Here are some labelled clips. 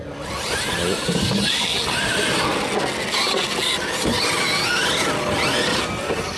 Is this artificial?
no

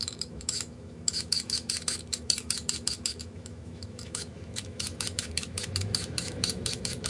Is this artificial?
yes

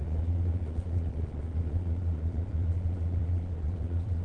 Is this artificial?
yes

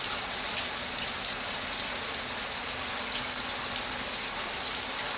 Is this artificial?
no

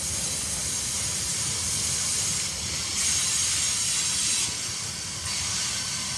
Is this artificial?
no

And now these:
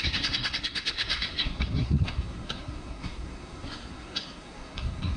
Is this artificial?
yes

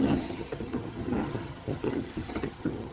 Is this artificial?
yes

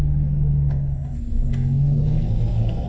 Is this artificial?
yes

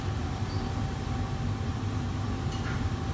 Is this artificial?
no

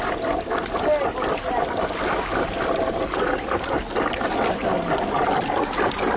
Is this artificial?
no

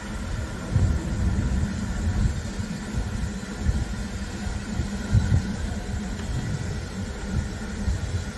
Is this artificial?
no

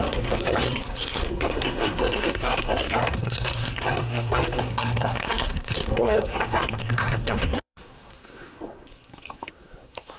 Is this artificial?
yes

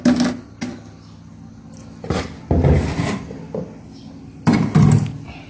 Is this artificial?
no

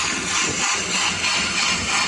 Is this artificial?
no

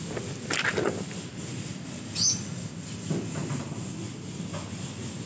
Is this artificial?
no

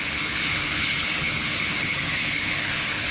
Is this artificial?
yes